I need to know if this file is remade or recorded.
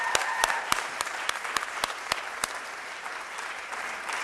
remade